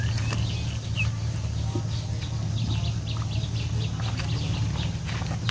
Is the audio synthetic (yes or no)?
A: no